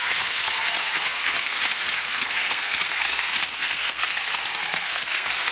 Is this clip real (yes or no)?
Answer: no